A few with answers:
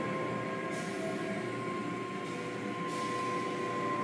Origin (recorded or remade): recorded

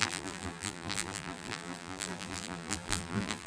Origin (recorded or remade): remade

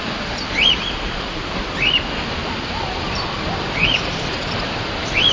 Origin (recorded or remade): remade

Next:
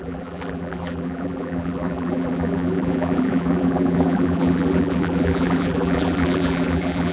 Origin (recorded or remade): remade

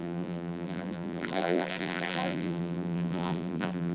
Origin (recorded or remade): remade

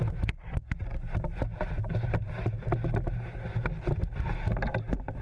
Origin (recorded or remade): recorded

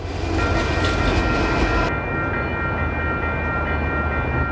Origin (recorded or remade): recorded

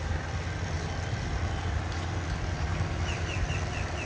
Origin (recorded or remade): remade